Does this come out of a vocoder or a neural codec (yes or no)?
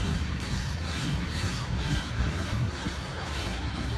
yes